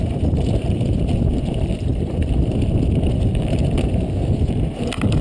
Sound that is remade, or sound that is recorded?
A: remade